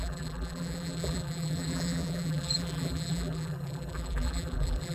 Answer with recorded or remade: remade